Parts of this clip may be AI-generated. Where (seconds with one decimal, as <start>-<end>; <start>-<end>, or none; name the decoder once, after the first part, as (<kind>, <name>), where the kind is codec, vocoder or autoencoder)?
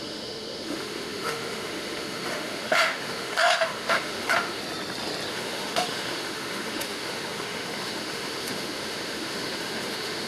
0.0-4.6 (autoencoder, DAC-VAE); 5.3-10.3